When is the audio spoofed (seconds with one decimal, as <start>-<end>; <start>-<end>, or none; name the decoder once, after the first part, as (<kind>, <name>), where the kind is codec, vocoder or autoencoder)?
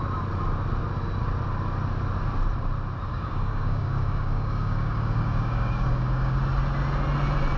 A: 3.1-6.4 (codec, DAC)